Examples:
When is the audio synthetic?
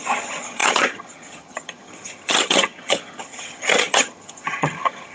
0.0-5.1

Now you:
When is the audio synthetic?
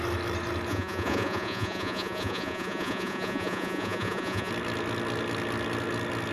0.7-4.5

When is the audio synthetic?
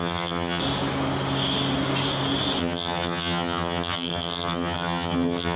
0.0-0.6; 2.6-5.6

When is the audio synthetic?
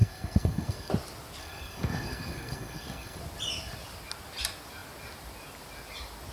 0.0-0.9; 1.4-3.2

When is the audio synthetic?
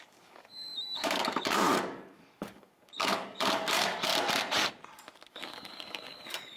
0.0-4.1; 5.3-6.6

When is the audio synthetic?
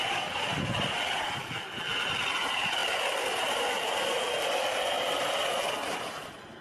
none